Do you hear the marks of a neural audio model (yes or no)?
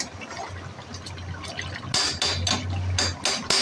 no